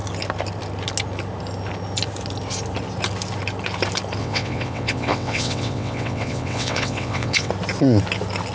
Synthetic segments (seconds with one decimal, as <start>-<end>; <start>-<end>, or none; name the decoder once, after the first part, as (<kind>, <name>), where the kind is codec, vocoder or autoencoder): 4.2-7.5 (vocoder, WaveNeXt)